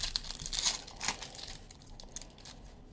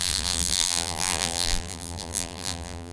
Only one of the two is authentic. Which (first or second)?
first